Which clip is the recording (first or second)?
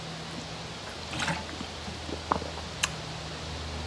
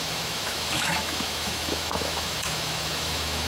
first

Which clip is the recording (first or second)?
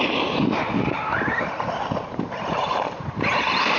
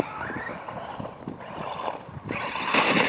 second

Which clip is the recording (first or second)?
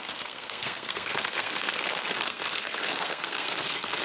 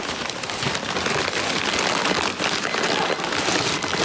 second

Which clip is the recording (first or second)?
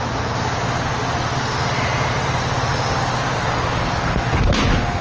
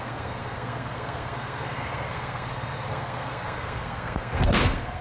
first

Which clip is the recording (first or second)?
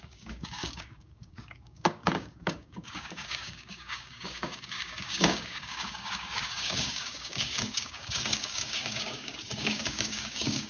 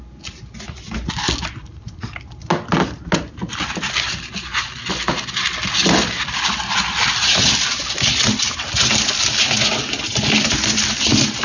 second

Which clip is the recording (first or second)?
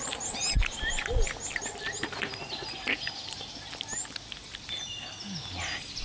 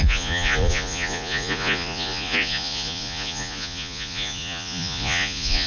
first